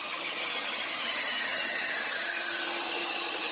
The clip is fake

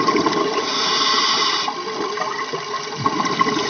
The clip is real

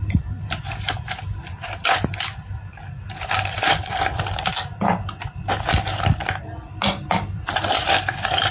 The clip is real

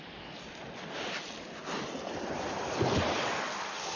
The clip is real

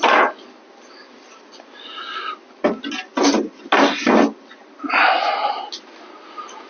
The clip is real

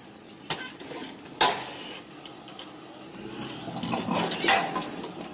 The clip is real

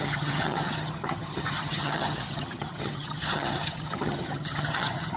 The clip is fake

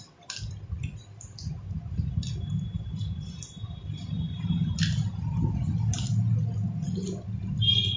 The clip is real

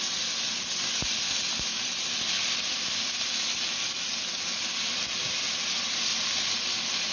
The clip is real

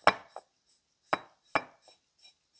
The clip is real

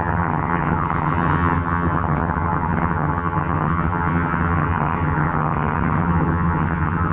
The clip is fake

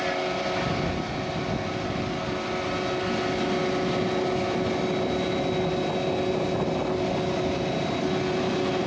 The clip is real